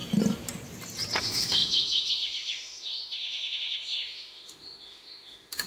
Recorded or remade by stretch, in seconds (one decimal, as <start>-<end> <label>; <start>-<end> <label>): 0.0-1.2 recorded; 1.2-5.7 remade